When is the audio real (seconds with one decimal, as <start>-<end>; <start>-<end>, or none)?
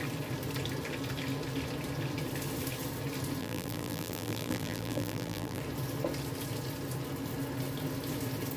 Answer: 0.0-3.4; 5.6-8.6